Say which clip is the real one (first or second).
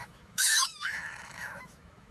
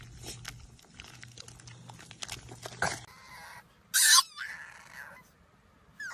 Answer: second